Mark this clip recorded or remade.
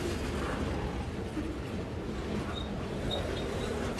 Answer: recorded